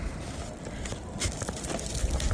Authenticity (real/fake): real